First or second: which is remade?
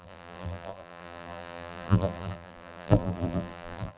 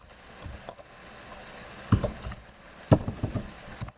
first